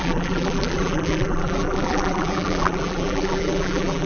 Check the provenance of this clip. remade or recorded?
remade